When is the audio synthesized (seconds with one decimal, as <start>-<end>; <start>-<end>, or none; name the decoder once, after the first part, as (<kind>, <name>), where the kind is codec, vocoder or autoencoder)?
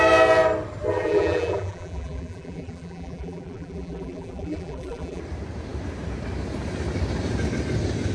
0.9-5.2 (vocoder, BigVGAN v2)